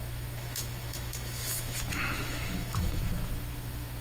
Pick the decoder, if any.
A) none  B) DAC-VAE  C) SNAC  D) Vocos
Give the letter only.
B